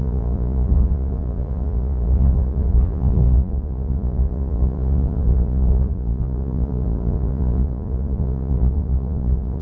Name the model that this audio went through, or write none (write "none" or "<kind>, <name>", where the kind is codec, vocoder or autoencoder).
vocoder, Vocos